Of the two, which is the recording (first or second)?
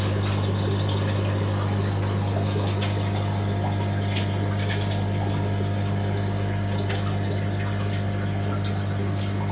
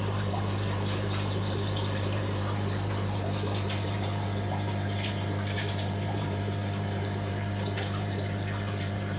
first